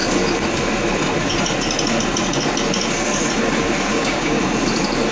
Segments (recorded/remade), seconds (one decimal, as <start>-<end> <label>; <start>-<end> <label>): 0.0-3.9 recorded; 3.9-4.4 remade; 4.4-5.1 recorded